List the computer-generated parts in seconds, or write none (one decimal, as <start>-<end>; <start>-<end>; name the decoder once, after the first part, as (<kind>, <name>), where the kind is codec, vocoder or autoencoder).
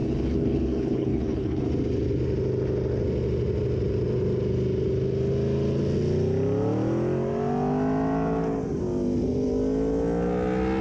0.0-1.6 (codec, HILCodec)